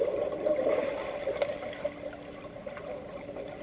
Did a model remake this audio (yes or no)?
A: no